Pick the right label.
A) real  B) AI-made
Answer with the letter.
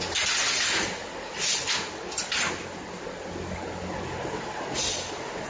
A